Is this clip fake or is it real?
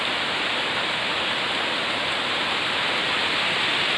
real